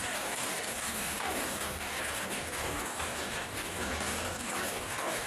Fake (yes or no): yes